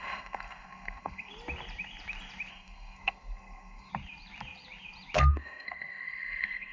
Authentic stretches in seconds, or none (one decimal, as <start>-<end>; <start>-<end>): 1.3-2.5; 3.9-5.3